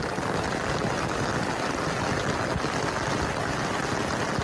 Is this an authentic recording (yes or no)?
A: yes